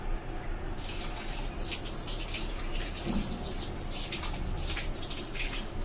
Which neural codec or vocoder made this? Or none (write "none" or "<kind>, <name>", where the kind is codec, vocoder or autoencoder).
none